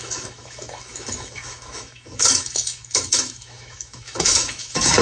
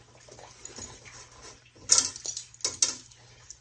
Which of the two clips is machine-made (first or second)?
first